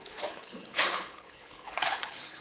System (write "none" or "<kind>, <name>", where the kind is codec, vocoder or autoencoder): codec, HILCodec